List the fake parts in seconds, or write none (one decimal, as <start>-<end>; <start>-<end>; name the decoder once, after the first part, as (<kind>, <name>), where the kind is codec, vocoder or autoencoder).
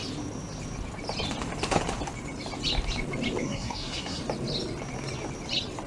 3.4-4.2 (codec, SNAC)